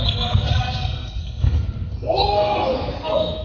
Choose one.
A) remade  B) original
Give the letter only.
A